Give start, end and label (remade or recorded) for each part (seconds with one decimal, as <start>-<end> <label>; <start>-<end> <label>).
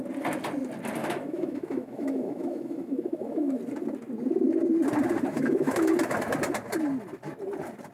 0.0-1.0 recorded; 1.0-3.6 remade; 3.6-5.3 recorded; 5.3-5.9 remade; 5.9-7.9 recorded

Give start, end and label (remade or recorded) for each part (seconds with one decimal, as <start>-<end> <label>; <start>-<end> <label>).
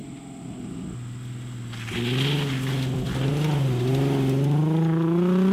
0.0-5.5 recorded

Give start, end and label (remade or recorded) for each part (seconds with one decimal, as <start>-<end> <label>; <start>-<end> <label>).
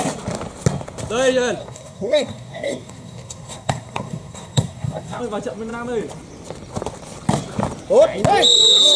0.0-1.6 recorded; 1.6-5.2 remade; 5.2-9.0 recorded